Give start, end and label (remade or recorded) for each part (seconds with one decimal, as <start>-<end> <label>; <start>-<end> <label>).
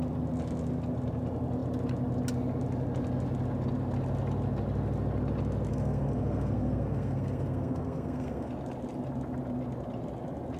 0.0-5.7 recorded; 5.7-8.5 remade; 8.5-10.6 recorded